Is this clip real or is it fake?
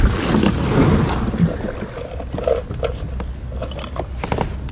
real